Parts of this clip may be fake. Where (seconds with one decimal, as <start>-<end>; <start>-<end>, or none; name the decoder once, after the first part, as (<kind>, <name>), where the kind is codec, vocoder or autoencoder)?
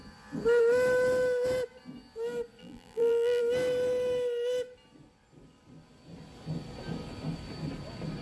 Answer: 2.6-3.4 (vocoder, BigVGAN v2)